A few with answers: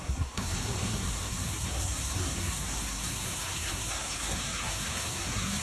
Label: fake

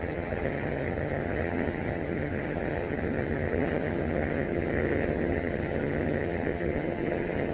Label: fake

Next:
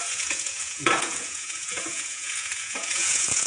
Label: fake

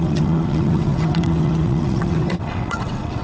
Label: fake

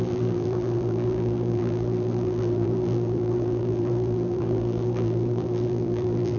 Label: fake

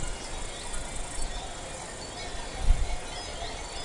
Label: real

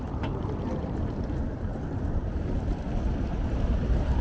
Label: fake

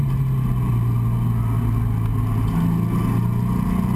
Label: real